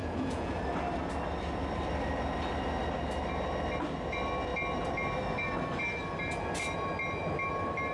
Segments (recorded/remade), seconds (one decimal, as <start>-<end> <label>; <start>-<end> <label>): 0.0-0.5 remade; 0.5-7.9 recorded